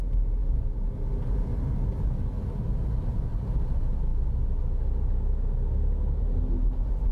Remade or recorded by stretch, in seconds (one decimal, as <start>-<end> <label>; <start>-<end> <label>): 0.0-7.1 recorded